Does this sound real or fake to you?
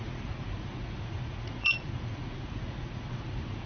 fake